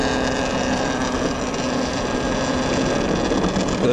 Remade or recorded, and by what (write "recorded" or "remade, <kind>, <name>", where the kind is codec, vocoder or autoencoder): recorded